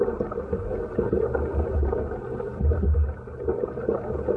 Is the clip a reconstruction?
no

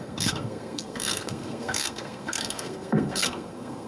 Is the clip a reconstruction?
yes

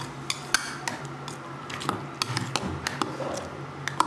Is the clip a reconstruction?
no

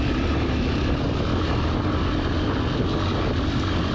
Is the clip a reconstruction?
no